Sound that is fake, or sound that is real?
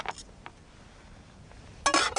real